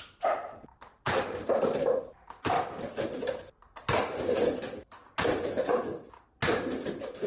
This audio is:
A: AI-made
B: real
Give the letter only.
B